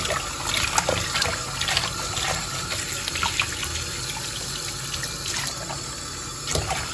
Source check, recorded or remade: recorded